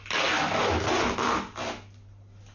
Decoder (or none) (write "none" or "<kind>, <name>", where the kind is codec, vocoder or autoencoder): none